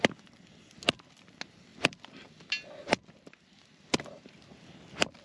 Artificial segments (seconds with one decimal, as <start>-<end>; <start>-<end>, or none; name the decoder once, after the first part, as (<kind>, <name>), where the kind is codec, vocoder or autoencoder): none